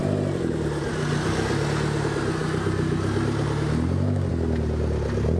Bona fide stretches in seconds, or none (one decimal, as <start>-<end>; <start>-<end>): 0.0-5.4